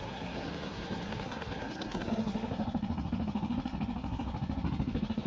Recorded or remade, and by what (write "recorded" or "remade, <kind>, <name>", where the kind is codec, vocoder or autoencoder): remade, codec, SNAC